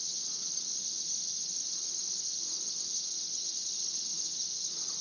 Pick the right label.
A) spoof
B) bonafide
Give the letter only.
A